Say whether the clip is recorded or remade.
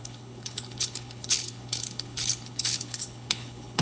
remade